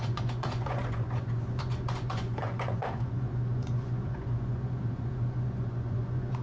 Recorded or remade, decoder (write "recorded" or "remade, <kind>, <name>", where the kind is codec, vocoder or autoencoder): remade, vocoder, Vocos